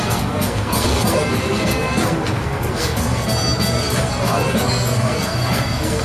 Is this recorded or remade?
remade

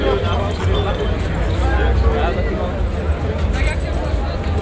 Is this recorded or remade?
recorded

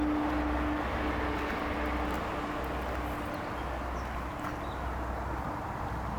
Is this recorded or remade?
recorded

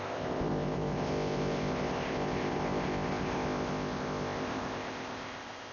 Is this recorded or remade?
remade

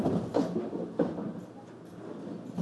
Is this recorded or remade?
recorded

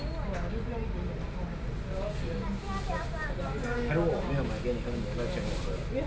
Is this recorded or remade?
recorded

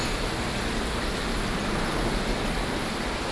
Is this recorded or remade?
recorded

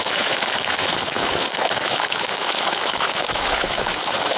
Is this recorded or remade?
remade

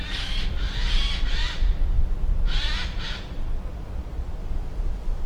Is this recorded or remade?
remade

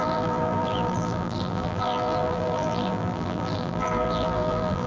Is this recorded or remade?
remade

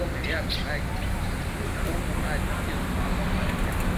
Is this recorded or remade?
recorded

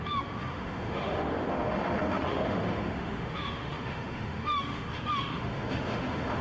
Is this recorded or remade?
remade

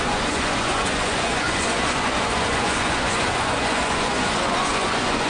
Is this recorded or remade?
remade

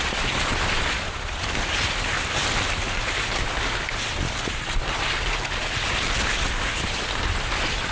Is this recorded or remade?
recorded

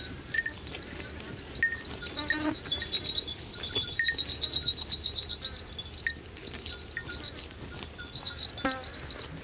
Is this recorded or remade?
recorded